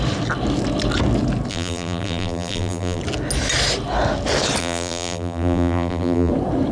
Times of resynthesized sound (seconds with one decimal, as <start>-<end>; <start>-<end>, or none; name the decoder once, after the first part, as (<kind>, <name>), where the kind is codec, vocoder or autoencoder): 1.5-3.0 (vocoder, BigVGAN v2); 4.6-6.3